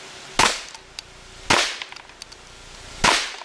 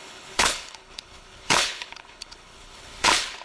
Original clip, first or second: first